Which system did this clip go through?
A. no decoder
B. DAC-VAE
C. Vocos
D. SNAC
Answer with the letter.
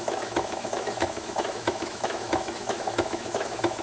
B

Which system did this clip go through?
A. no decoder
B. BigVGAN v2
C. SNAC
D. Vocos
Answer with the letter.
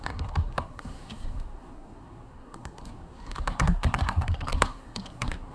C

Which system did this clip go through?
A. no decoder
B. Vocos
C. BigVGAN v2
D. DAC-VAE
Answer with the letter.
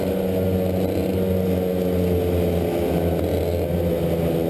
A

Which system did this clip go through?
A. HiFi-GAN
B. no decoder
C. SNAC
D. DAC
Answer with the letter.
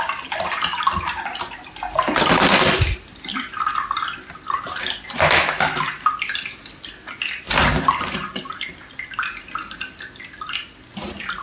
B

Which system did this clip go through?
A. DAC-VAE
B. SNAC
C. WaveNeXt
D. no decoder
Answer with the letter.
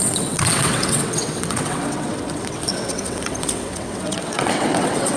C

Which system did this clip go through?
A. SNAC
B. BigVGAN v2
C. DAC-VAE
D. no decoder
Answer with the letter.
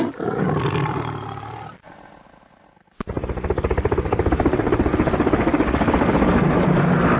D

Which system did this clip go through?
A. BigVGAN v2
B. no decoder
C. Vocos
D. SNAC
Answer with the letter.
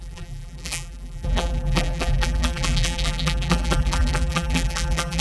A